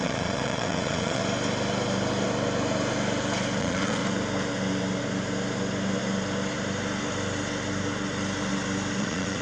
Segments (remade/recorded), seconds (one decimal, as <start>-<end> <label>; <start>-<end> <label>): 0.0-1.2 remade; 1.2-3.6 recorded; 3.6-4.0 remade; 4.0-9.0 recorded; 9.0-9.4 remade